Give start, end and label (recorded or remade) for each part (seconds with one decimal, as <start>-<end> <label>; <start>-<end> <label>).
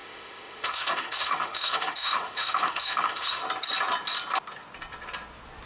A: 0.0-3.4 remade; 3.4-5.7 recorded